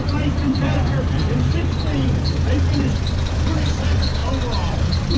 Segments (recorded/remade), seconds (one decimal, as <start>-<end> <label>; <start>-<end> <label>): 0.0-4.2 remade; 4.2-4.8 recorded; 4.8-5.2 remade

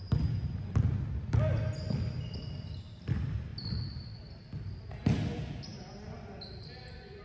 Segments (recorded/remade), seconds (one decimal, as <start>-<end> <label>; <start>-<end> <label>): 0.0-7.2 recorded

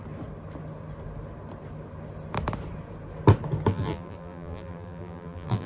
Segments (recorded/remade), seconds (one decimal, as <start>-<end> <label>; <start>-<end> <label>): 0.0-3.7 recorded; 3.7-5.7 remade

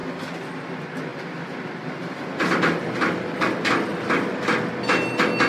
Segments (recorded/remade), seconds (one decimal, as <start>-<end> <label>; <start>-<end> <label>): 0.0-1.1 recorded; 1.1-4.4 remade; 4.4-5.5 recorded

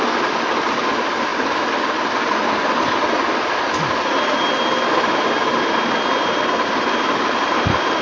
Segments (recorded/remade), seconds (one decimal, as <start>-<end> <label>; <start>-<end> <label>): 0.0-8.0 recorded

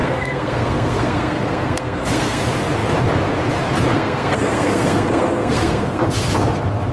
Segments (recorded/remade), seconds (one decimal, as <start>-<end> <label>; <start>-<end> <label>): 0.0-2.4 remade; 2.4-3.9 recorded; 3.9-6.0 remade; 6.0-6.9 recorded